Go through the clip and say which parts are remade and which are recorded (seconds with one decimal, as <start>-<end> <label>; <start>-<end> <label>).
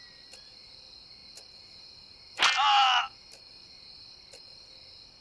0.0-5.2 recorded